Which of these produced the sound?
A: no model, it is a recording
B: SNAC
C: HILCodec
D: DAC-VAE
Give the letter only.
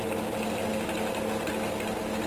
A